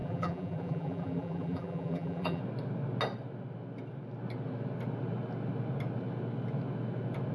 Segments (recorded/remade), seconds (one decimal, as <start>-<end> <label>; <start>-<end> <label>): 0.0-2.4 remade; 2.4-7.3 recorded